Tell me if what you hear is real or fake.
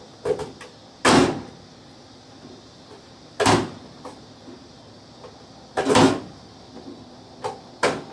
real